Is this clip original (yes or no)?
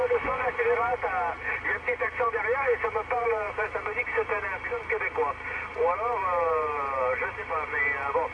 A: yes